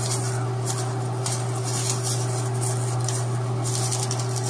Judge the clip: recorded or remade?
recorded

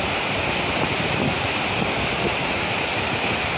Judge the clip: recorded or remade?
recorded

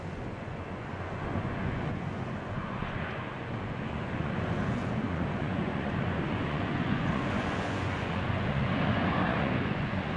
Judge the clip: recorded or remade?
remade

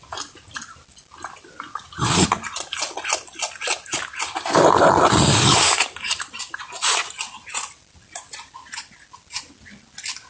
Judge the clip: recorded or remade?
recorded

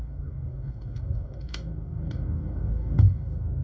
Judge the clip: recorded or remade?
remade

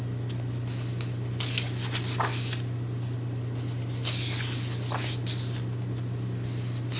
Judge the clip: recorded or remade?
recorded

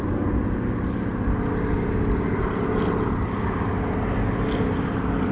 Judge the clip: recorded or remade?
recorded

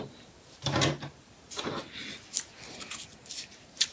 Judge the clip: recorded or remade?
remade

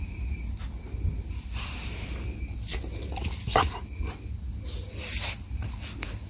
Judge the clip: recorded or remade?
recorded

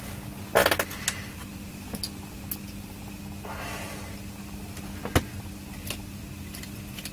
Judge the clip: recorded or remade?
recorded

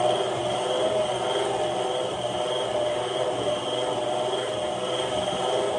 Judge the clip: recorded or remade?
recorded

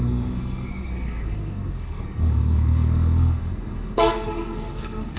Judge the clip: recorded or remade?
remade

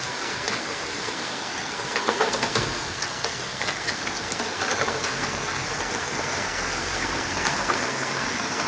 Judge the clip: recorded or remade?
remade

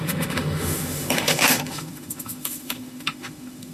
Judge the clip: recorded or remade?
remade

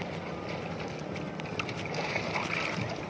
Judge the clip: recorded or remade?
recorded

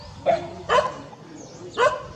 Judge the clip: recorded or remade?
recorded